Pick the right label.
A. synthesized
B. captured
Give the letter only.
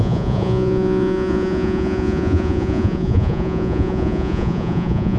A